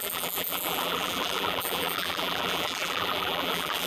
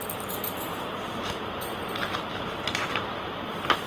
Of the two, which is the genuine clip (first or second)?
second